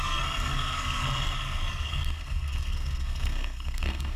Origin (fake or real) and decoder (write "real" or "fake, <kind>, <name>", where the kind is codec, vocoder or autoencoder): fake, codec, SNAC